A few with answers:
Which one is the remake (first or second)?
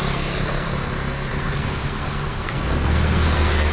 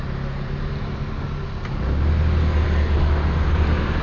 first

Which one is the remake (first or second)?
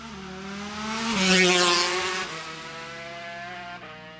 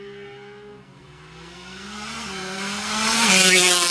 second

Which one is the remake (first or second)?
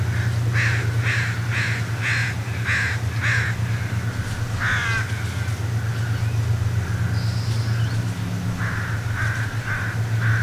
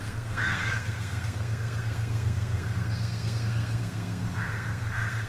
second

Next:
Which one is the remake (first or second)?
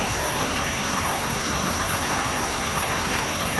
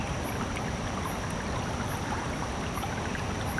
first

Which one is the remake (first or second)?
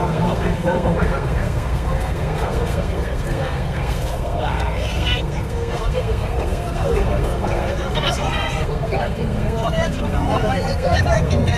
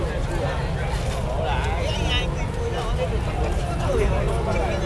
first